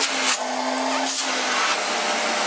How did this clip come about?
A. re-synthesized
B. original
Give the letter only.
B